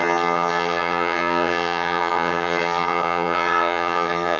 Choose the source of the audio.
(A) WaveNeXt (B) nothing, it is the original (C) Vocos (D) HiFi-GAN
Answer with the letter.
D